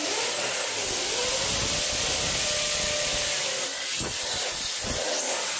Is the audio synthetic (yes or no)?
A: no